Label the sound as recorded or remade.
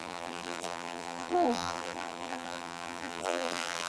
remade